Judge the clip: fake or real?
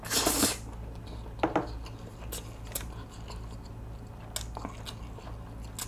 real